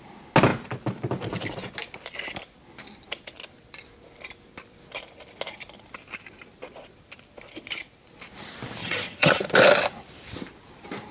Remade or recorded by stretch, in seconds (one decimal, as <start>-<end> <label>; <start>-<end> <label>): 0.0-8.8 recorded; 8.8-9.4 remade; 9.4-11.1 recorded